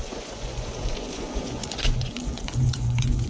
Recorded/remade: remade